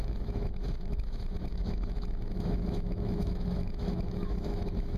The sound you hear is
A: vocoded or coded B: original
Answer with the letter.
A